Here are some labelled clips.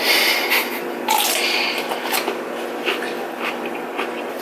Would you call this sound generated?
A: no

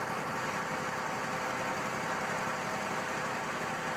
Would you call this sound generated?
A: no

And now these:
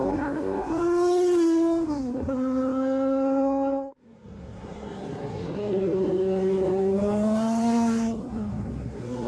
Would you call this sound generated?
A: yes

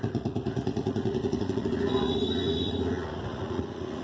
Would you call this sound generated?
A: yes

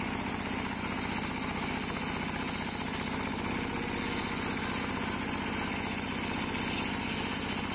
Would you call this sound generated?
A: no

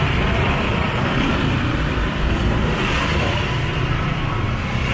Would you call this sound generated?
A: yes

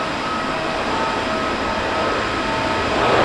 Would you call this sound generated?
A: no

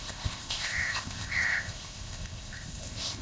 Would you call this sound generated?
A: yes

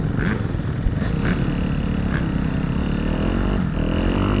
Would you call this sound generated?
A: no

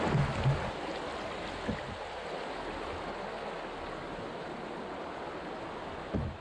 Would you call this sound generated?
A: no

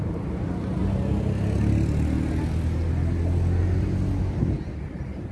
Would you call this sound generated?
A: no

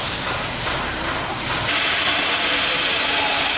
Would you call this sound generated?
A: yes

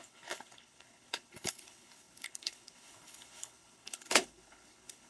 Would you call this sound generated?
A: yes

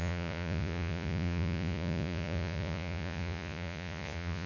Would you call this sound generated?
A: yes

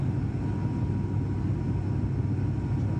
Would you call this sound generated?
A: no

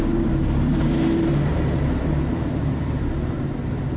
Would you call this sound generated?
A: yes